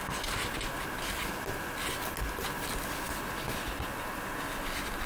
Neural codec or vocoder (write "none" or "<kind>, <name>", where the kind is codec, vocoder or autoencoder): none